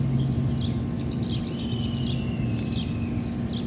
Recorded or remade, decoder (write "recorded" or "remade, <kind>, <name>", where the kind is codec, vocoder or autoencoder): recorded